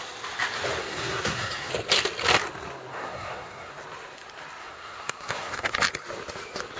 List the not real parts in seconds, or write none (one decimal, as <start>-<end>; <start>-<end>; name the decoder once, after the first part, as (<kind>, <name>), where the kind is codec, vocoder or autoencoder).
0.8-1.7 (codec, SNAC); 2.9-3.7; 4.6-5.7